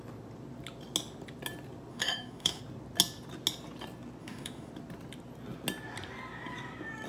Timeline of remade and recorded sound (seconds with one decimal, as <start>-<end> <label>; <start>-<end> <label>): 0.0-1.9 recorded; 1.9-2.6 remade; 2.6-4.2 recorded; 4.2-4.7 remade; 4.7-7.1 recorded